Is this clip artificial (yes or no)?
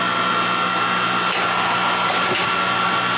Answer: no